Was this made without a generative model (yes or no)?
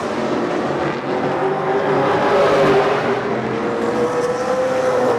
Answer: yes